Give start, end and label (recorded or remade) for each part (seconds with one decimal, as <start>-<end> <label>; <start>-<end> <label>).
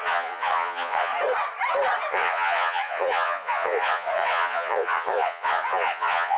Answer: 0.0-1.1 remade; 1.1-2.1 recorded; 2.1-6.4 remade